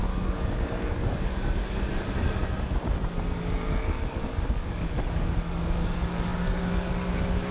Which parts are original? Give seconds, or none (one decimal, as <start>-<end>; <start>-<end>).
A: 2.4-3.8